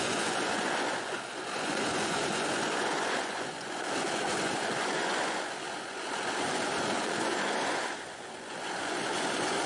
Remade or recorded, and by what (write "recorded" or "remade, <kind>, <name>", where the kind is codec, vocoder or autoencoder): remade, vocoder, Vocos